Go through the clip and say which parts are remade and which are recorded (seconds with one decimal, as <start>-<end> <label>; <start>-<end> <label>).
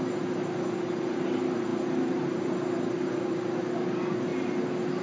0.0-5.0 recorded